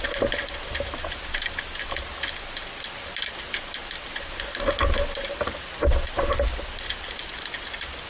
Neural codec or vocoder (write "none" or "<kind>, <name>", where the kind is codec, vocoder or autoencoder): none